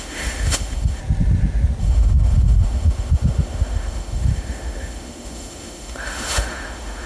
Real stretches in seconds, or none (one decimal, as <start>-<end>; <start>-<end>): 1.0-1.8